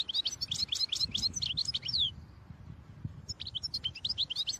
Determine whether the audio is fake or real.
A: real